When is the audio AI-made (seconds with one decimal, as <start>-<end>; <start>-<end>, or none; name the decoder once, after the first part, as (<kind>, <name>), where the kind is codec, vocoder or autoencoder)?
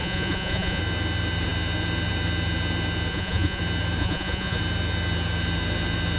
0.0-0.8 (vocoder, Vocos); 3.1-3.6; 4.0-4.6